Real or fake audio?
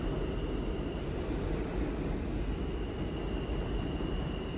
real